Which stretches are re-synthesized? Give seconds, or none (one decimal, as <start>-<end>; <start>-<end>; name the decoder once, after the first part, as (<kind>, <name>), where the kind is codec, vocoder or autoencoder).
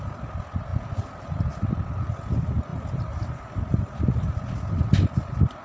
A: none